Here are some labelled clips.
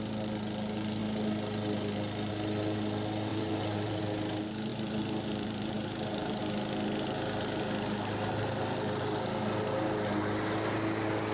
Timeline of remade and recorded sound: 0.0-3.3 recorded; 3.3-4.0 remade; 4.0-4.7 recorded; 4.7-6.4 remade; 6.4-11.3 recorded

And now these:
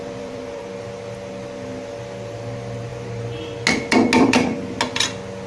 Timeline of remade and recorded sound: 0.0-0.6 remade; 0.6-5.5 recorded

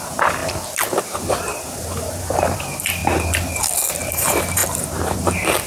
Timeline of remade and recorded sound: 0.0-0.4 remade; 0.4-1.0 recorded; 1.0-3.0 remade; 3.0-4.1 recorded; 4.1-5.7 remade

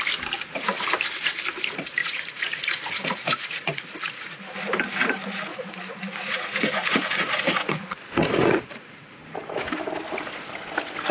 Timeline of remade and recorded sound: 0.0-2.0 recorded; 2.0-4.4 remade; 4.4-5.5 recorded; 5.5-9.2 remade; 9.2-11.1 recorded

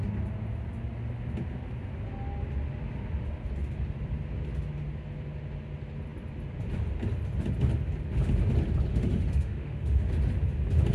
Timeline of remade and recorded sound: 0.0-8.9 recorded; 8.9-10.1 remade; 10.1-10.9 recorded

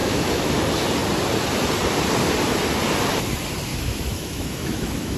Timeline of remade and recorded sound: 0.0-0.5 remade; 0.5-3.7 recorded; 3.7-5.2 remade